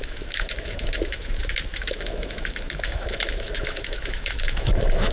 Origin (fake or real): fake